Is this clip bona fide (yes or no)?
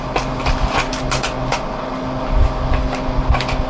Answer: yes